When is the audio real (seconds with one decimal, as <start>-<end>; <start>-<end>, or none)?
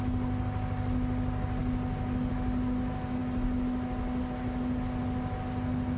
0.0-6.0